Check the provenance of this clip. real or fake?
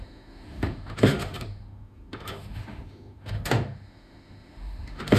fake